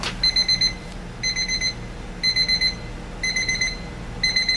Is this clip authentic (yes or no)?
yes